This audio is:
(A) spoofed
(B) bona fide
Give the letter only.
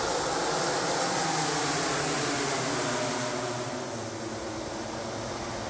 B